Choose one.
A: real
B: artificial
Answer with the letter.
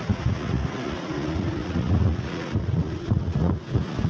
B